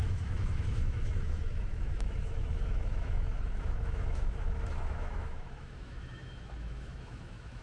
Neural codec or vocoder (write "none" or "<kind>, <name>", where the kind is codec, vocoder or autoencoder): autoencoder, DAC-VAE